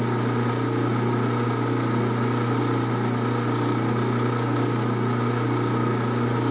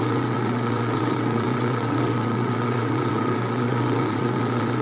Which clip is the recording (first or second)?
first